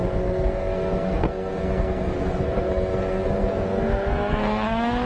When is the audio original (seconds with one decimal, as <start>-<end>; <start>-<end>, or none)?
none